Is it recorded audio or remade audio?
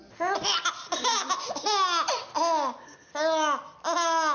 recorded